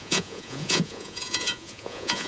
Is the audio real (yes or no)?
no